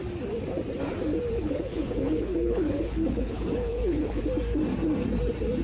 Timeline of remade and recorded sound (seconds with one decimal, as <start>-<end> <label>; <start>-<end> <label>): 0.0-1.4 recorded; 1.4-4.2 remade; 4.2-5.6 recorded